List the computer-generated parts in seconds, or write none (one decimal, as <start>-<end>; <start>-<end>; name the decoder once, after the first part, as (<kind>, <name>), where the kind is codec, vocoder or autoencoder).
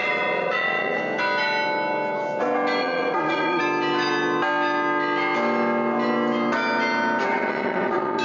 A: 0.0-1.0 (vocoder, Vocos); 2.8-3.6; 7.3-8.2